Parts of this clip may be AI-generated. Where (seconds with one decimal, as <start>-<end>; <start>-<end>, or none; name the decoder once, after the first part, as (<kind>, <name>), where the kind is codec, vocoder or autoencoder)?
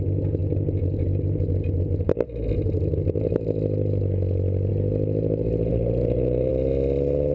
5.7-6.5 (vocoder, BigVGAN v2)